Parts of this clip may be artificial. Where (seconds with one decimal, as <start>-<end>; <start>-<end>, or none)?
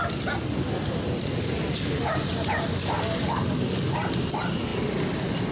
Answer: none